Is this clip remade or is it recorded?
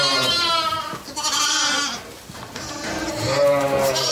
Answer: recorded